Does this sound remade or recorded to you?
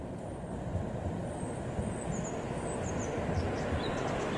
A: recorded